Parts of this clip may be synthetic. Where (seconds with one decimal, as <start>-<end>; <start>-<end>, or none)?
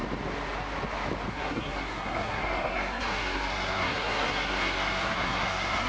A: 1.3-5.9